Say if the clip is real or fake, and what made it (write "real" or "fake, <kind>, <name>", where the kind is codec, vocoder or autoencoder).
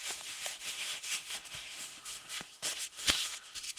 fake, autoencoder, DAC-VAE